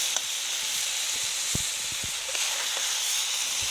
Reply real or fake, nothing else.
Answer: real